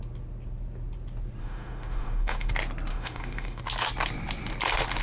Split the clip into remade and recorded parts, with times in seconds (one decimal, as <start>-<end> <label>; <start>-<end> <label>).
0.0-1.4 recorded; 1.4-2.5 remade; 2.5-2.9 recorded; 2.9-3.6 remade; 3.6-5.0 recorded